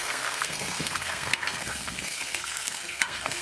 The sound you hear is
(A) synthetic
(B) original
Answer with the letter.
A